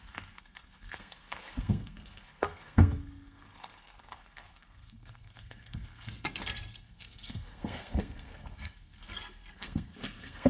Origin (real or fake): fake